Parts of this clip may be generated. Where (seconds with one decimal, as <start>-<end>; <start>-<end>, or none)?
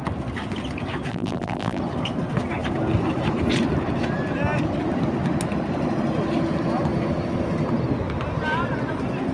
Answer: 1.1-1.8